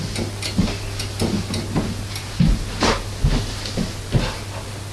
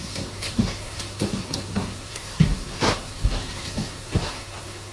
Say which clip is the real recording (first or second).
first